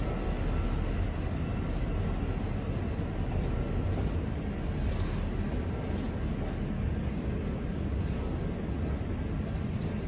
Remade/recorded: recorded